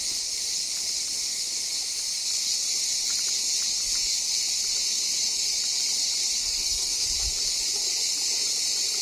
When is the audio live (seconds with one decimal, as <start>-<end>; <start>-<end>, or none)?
0.0-6.4; 7.1-9.0